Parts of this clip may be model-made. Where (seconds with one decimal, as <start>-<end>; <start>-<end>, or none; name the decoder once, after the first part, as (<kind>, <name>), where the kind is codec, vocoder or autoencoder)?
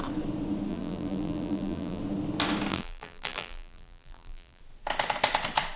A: 0.7-2.0 (vocoder, BigVGAN v2); 2.7-4.6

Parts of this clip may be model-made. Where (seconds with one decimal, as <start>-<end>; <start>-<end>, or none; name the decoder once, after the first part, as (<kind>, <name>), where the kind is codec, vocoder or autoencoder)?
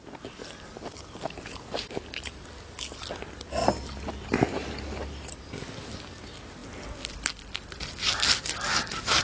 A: 0.7-1.8 (vocoder, BigVGAN v2); 3.6-5.3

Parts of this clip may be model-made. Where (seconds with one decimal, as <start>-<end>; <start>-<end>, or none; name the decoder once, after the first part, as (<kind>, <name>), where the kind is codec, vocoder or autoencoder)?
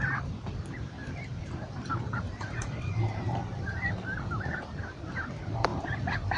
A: 1.0-3.9 (vocoder, BigVGAN v2)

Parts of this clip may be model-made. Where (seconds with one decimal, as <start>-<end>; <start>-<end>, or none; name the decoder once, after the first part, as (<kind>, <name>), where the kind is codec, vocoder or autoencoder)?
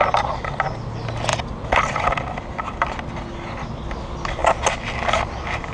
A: 1.3-2.9 (vocoder, BigVGAN v2)